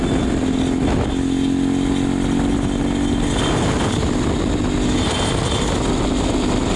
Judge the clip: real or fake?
real